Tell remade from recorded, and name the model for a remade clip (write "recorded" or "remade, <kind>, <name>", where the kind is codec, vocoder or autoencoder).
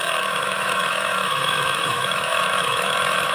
remade, autoencoder, DAC-VAE